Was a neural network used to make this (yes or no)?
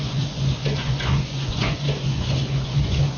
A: yes